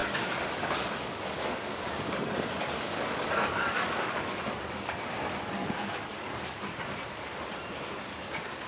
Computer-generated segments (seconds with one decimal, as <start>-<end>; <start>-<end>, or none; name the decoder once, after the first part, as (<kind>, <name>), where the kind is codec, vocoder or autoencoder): 0.0-4.9 (codec, DAC); 5.6-6.6